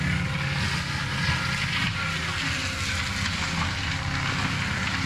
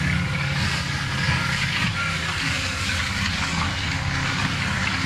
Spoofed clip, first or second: second